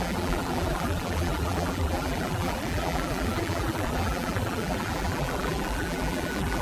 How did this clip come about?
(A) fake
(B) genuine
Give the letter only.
A